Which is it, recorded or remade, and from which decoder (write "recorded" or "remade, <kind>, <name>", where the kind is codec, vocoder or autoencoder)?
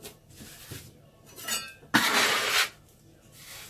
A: recorded